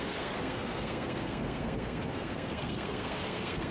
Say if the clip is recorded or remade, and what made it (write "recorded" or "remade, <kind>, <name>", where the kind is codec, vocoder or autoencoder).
remade, codec, SNAC